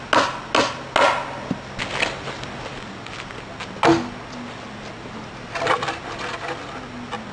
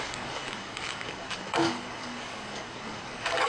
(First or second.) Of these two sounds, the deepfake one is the second